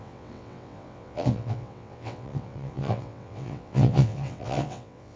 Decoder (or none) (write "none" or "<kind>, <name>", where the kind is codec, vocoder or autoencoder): vocoder, WaveNeXt